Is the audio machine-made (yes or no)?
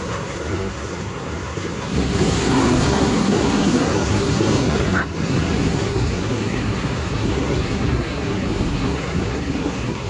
yes